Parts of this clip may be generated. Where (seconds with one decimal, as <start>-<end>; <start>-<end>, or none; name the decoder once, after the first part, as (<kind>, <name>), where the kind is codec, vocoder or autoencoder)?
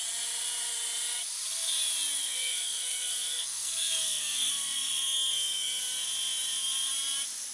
2.2-5.8 (codec, SNAC)